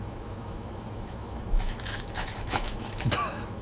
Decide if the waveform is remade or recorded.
remade